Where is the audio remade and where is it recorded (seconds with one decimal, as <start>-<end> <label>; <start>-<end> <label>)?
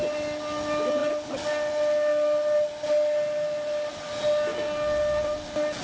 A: 0.0-5.8 recorded